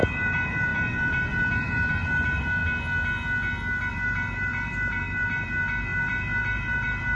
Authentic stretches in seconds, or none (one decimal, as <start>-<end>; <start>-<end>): 2.6-3.9